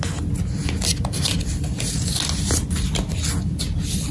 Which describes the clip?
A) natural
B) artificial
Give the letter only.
A